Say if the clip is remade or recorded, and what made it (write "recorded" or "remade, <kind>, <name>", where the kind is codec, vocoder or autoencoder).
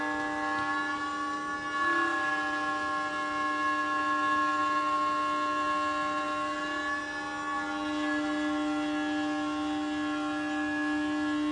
recorded